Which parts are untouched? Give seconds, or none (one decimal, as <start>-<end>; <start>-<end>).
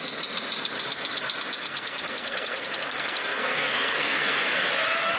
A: 0.0-1.6; 4.7-5.2